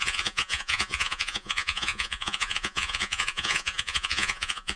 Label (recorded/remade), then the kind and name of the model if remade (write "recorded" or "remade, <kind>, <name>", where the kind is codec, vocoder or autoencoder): remade, vocoder, Vocos